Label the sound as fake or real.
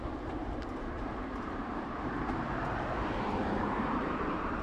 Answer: fake